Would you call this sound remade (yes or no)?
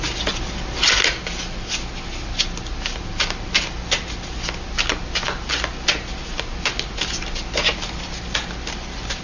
no